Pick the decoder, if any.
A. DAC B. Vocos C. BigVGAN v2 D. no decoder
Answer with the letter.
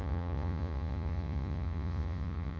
B